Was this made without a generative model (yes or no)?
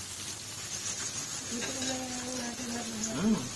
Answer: yes